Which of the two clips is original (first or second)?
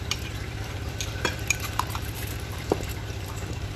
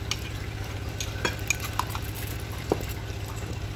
second